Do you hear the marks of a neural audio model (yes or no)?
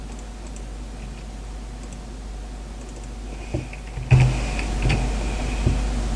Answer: no